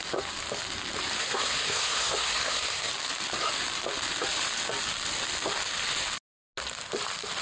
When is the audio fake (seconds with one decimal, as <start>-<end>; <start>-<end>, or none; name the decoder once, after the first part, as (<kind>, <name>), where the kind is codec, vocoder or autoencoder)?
1.2-2.9 (codec, SNAC)